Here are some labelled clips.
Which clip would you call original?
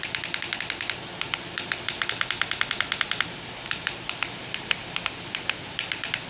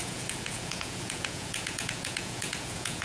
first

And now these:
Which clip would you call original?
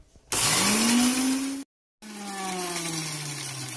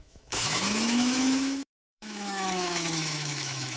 first